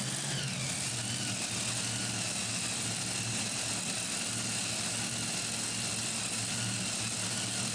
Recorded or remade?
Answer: recorded